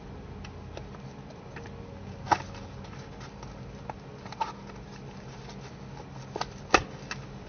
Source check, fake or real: real